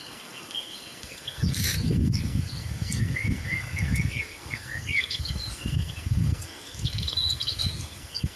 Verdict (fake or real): fake